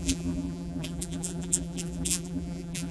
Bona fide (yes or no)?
no